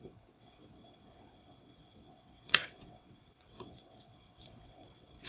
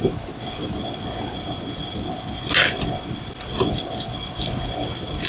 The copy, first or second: first